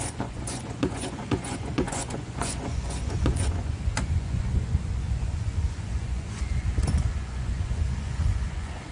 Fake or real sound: fake